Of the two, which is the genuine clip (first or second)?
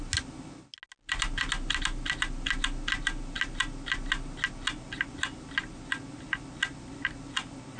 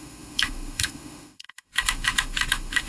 first